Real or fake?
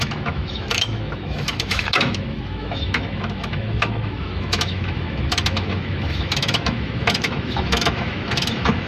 fake